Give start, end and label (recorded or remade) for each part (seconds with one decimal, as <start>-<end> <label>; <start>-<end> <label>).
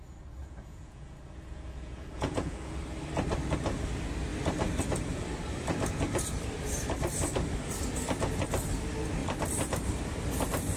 0.0-0.4 recorded; 0.4-2.8 remade; 2.8-10.8 recorded